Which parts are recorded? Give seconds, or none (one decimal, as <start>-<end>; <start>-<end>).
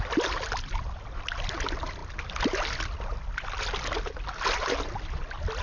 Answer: 0.0-5.6